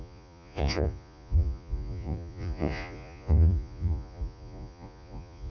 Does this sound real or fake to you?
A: fake